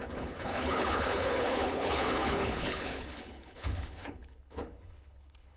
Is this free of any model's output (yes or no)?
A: no